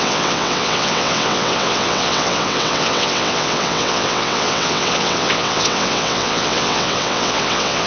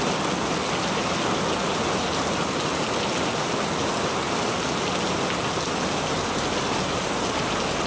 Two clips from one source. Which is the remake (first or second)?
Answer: first